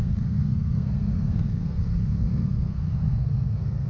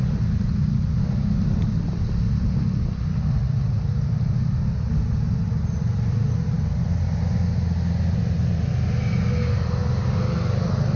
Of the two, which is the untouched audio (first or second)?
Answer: second